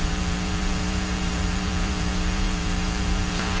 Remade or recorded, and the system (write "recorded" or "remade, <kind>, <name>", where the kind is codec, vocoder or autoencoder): remade, vocoder, BigVGAN v2